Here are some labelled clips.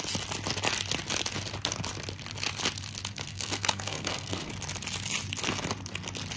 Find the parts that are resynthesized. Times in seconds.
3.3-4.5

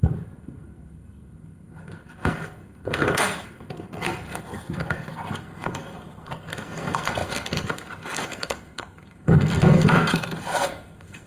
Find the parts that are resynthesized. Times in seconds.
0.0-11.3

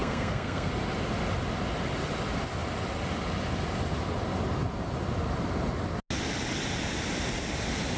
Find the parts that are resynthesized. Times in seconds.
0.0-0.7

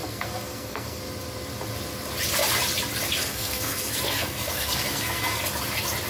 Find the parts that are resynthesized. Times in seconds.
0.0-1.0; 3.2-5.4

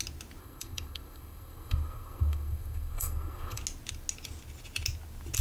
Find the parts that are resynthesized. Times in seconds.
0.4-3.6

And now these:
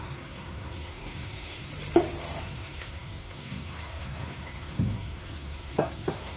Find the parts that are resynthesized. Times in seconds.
0.0-1.7; 2.4-6.4